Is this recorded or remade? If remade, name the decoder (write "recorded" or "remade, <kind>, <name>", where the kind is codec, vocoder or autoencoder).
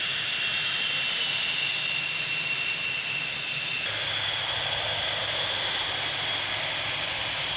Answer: recorded